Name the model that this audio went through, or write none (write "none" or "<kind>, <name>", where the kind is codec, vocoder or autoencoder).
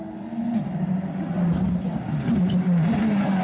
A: none